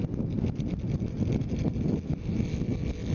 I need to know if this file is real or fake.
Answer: real